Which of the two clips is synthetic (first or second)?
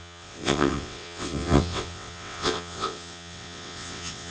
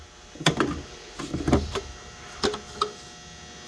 first